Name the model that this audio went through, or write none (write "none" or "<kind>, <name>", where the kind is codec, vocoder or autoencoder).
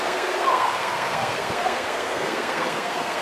codec, SNAC